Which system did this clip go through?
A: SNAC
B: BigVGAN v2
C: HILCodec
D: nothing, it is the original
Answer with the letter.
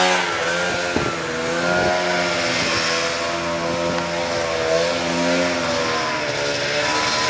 D